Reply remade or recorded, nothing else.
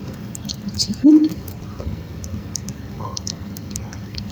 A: remade